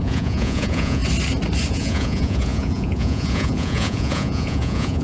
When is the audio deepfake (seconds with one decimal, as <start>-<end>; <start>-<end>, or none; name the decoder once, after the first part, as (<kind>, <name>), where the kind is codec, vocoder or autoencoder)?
0.0-1.0 (vocoder, Vocos); 1.7-5.0

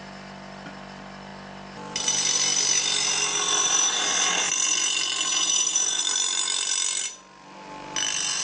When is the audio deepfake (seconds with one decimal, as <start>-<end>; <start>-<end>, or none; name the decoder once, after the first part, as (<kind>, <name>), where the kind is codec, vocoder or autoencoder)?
5.3-6.0 (vocoder, Vocos)

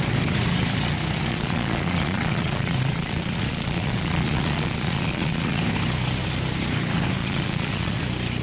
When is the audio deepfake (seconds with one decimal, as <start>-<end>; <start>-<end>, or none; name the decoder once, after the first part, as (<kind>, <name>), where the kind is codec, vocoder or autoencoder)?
1.3-5.6 (vocoder, Vocos); 7.2-8.0